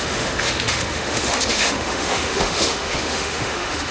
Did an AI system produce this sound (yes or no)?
yes